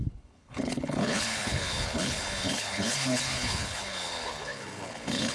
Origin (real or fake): fake